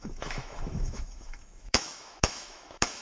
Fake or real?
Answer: fake